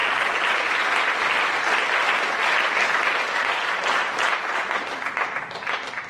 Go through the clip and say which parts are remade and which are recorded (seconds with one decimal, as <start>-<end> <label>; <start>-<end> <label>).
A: 0.0-6.1 recorded